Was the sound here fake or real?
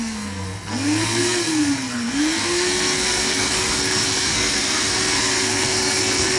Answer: fake